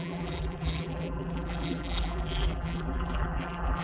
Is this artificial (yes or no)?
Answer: yes